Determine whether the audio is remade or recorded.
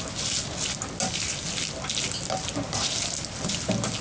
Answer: recorded